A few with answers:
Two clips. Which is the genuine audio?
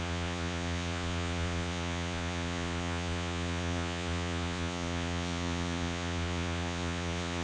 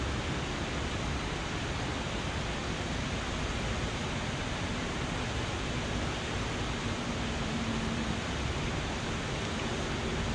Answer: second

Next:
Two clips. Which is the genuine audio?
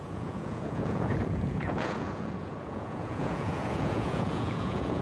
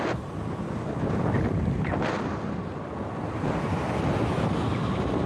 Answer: second